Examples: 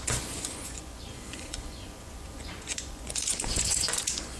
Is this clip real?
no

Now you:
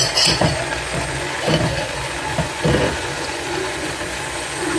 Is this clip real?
no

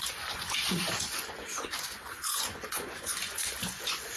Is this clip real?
no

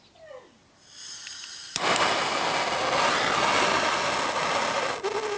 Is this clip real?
yes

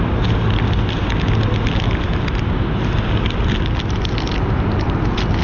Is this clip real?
yes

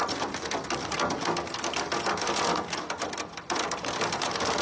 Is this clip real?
yes